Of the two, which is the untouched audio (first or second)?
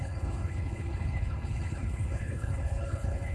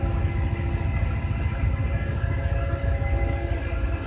second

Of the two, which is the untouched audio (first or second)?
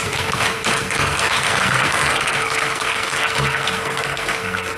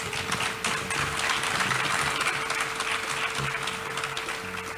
second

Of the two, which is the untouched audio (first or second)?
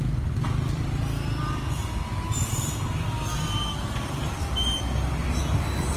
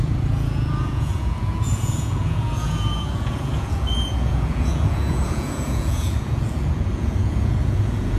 first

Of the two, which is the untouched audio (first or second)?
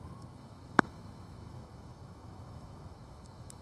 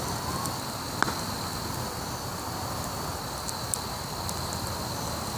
second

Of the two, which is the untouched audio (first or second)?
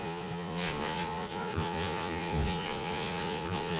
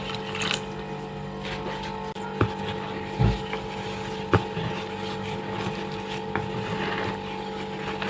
second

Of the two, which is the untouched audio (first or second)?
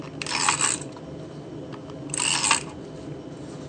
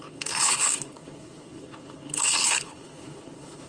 first